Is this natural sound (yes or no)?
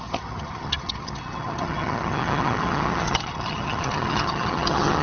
no